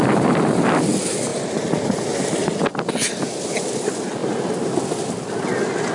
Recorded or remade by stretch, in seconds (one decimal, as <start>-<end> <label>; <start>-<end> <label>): 0.0-5.9 recorded